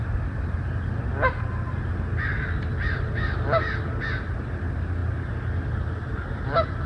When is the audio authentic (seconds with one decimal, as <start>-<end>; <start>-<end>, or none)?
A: 0.0-6.9